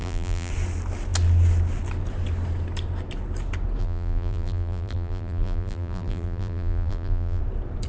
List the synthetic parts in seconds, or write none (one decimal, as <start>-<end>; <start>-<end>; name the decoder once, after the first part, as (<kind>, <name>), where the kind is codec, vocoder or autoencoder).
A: 0.0-0.5 (vocoder, BigVGAN v2); 3.8-7.4